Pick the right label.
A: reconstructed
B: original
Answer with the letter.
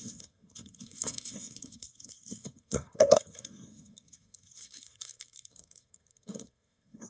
A